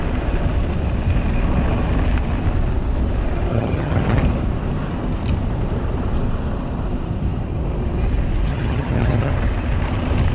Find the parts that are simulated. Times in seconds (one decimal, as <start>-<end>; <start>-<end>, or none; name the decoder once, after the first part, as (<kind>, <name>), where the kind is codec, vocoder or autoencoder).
3.5-4.2 (vocoder, HiFi-GAN); 8.5-9.3